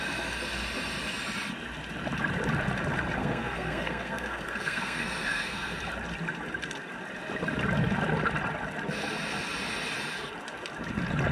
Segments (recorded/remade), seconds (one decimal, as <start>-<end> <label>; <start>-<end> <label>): 0.0-3.2 recorded; 3.2-5.8 remade; 5.8-11.3 recorded

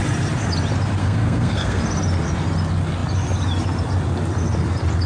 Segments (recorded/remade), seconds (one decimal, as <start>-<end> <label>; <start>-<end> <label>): 0.0-1.0 recorded; 1.0-1.8 remade; 1.8-5.1 recorded

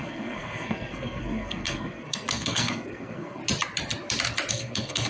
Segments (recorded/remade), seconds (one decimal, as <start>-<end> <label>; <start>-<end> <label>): 0.0-3.4 remade; 3.4-4.5 recorded; 4.5-5.1 remade

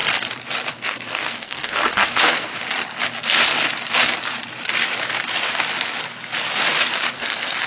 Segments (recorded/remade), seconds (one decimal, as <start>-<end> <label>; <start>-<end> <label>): 0.0-0.7 recorded; 0.7-2.5 remade; 2.5-7.1 recorded; 7.1-7.7 remade

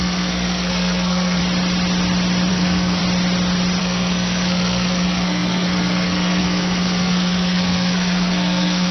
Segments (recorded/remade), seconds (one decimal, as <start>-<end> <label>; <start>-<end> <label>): 0.0-1.4 remade; 1.4-2.5 recorded; 2.5-3.0 remade; 3.0-3.8 recorded; 3.8-8.9 remade

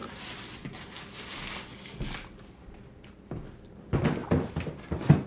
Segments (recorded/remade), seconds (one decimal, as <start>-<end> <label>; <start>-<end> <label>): 0.0-5.3 recorded

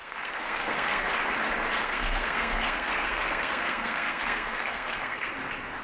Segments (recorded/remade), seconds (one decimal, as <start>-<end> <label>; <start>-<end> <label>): 0.0-1.1 remade; 1.1-1.8 recorded; 1.8-5.3 remade; 5.3-5.8 recorded